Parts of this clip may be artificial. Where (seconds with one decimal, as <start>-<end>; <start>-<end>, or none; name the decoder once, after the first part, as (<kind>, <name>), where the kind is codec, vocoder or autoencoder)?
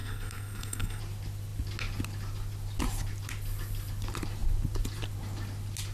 0.0-1.0 (codec, SNAC)